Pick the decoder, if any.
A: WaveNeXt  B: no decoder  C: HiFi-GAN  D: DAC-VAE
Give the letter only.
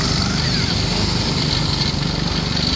B